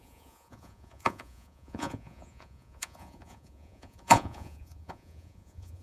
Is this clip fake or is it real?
fake